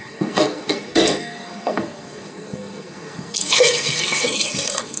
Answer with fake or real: fake